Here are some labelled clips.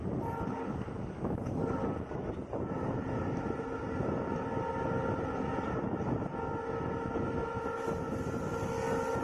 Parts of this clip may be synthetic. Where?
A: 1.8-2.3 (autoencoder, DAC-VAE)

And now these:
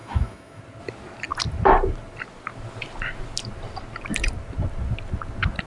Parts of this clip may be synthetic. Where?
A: 0.0-0.6 (autoencoder, DAC-VAE)

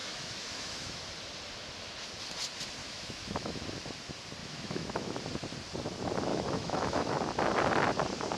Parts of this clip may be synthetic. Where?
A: 0.0-1.0 (autoencoder, DAC-VAE); 2.8-3.6; 4.4-5.2; 6.3-7.2

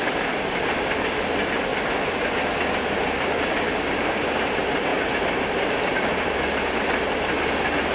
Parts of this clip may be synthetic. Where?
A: none

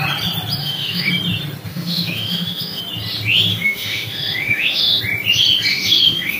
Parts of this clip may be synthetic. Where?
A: 0.6-1.1 (autoencoder, DAC-VAE); 1.7-2.8; 3.5-5.0; 5.7-6.4